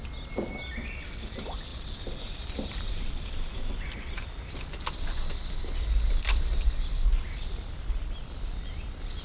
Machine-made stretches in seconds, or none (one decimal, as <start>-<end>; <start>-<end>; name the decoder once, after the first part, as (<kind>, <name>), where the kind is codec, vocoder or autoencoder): 1.7-3.3 (vocoder, BigVGAN v2)